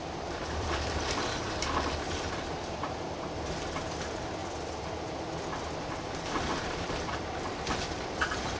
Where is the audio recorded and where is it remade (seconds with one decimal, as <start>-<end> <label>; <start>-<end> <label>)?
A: 0.0-4.4 remade; 4.4-5.9 recorded; 5.9-8.6 remade